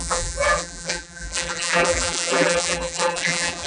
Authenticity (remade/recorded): remade